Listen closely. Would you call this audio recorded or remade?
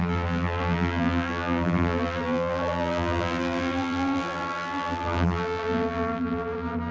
remade